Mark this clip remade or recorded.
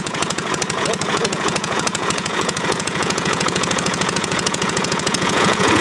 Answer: remade